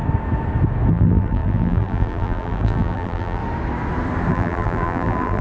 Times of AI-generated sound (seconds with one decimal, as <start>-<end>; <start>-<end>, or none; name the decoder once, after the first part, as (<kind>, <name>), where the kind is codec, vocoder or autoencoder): 0.9-3.4 (vocoder, BigVGAN v2); 4.3-5.4